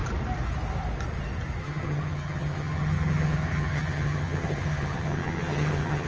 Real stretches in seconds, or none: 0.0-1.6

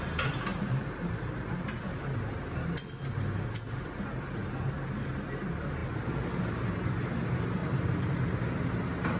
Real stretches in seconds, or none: 0.0-0.5; 1.8-7.6; 8.4-9.2

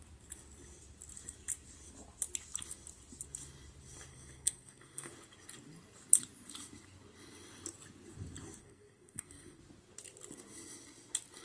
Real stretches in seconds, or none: 0.0-4.1; 5.1-8.6; 9.6-11.4

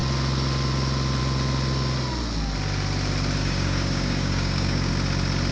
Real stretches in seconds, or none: 0.0-3.4; 4.9-5.5

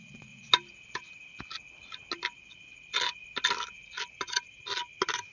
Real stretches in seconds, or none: 0.5-5.3

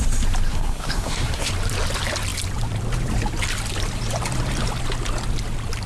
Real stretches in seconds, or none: 0.0-0.5; 1.5-5.9